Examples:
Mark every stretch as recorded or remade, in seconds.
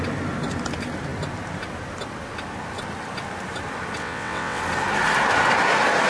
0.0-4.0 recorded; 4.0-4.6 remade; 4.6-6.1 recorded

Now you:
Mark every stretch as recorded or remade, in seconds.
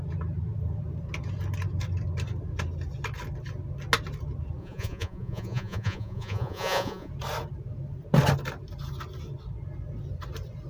0.0-4.6 recorded; 4.6-7.1 remade; 7.1-10.7 recorded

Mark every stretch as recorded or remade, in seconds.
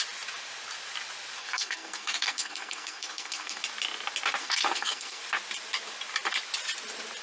0.0-1.4 recorded; 1.4-3.6 remade; 3.6-4.4 recorded; 4.4-5.2 remade; 5.2-7.2 recorded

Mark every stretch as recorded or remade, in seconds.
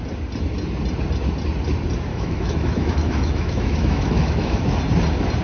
0.0-2.1 recorded; 2.1-4.8 remade; 4.8-5.4 recorded